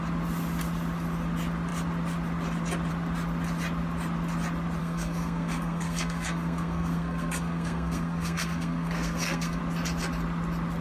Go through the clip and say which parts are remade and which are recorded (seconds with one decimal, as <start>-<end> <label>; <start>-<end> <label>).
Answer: 0.0-4.8 recorded; 4.8-9.6 remade; 9.6-10.8 recorded